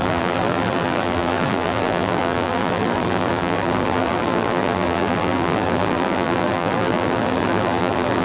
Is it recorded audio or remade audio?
remade